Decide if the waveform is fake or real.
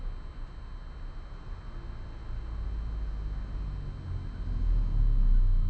real